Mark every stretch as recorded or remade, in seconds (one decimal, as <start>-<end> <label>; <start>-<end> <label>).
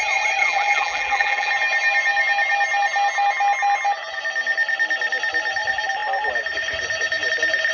0.0-0.4 recorded; 0.4-1.5 remade; 1.5-7.7 recorded